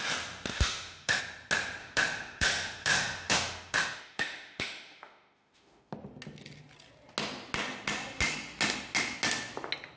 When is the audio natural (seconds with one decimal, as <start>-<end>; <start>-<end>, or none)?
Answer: 0.0-0.5; 1.2-1.8; 5.9-10.0